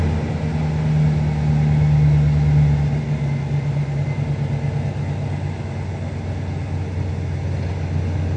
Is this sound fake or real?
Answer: real